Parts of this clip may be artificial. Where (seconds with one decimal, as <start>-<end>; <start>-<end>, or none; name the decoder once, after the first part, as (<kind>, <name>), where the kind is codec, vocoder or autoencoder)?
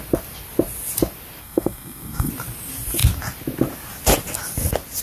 1.4-2.3 (codec, SNAC)